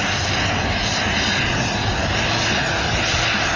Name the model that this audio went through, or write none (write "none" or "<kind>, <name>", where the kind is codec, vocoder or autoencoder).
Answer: none